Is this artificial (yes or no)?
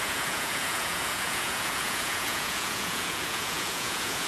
yes